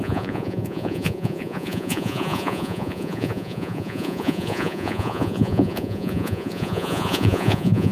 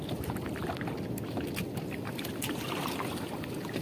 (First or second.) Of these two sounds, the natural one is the second